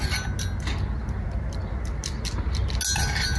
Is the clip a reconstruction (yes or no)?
no